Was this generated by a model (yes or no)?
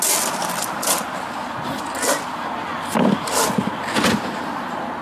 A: no